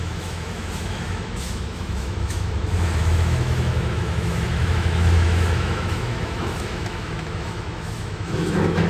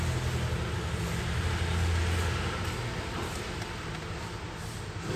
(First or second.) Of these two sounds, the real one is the second